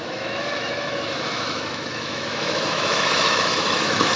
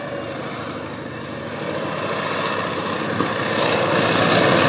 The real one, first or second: second